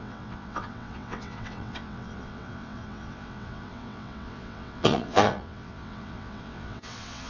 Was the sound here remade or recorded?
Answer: remade